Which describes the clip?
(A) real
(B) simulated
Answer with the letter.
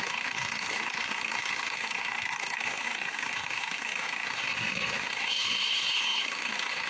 B